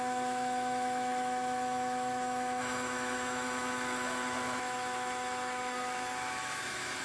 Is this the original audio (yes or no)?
no